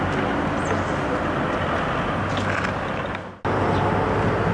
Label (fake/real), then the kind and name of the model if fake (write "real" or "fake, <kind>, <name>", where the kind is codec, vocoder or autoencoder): real